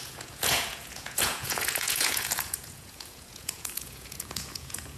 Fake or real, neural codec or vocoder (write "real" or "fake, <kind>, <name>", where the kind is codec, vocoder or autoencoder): fake, vocoder, Vocos